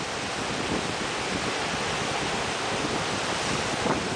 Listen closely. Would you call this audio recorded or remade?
recorded